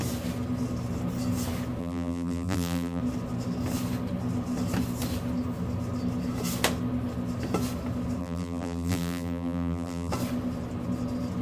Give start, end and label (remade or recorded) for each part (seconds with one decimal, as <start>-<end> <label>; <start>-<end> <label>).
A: 0.0-1.8 recorded; 1.8-3.0 remade; 3.0-8.2 recorded; 8.2-10.1 remade; 10.1-11.4 recorded